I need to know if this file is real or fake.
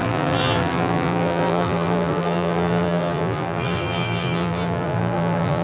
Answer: fake